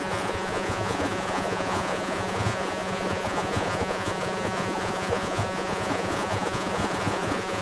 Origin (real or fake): fake